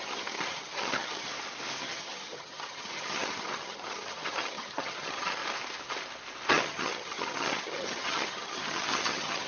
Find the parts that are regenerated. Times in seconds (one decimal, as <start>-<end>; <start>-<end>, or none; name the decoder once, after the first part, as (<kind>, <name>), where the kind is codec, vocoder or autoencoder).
0.0-1.3 (vocoder, HiFi-GAN); 1.8-5.4; 6.5-9.5